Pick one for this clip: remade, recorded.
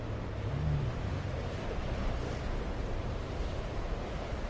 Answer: remade